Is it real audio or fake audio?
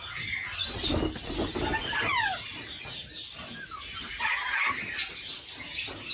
real